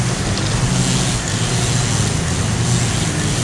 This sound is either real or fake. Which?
real